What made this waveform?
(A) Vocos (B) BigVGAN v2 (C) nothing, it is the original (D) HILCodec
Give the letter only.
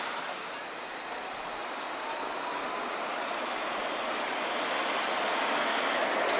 C